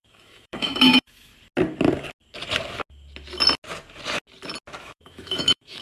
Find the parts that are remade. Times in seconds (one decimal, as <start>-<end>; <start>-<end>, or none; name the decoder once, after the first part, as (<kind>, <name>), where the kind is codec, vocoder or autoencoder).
0.0-1.3 (autoencoder, DAC-VAE); 4.8-5.8